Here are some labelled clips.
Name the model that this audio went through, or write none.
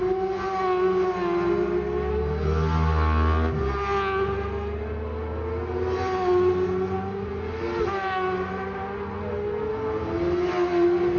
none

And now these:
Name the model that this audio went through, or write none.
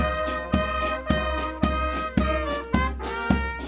none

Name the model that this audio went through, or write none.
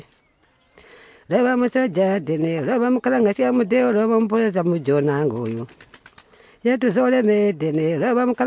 none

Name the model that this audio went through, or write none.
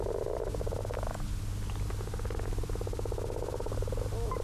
none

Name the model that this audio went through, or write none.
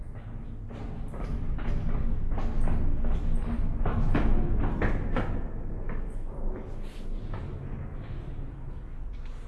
none